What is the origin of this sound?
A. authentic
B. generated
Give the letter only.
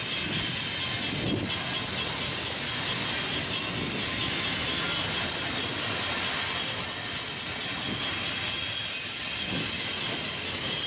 A